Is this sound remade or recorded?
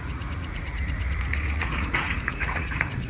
remade